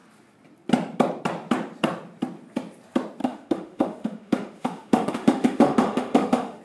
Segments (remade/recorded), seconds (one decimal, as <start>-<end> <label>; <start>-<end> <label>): 0.0-3.2 recorded; 3.2-6.6 remade